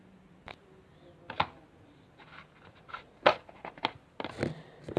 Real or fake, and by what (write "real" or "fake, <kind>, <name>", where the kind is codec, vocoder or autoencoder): real